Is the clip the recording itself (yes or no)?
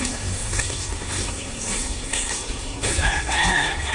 no